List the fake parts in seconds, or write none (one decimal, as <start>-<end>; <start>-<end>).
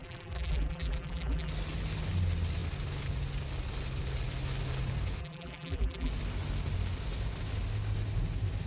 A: 0.0-1.5; 5.2-6.1